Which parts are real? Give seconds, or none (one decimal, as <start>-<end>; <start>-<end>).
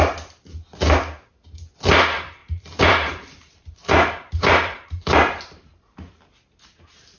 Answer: 0.0-2.4; 5.8-7.2